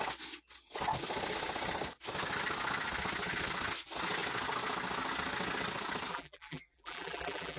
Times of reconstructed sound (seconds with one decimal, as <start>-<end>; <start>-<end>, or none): 6.1-7.6